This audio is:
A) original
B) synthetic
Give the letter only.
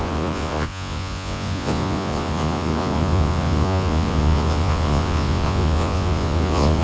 B